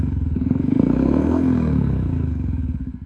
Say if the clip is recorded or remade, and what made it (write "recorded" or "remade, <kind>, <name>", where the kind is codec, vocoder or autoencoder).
remade, codec, SNAC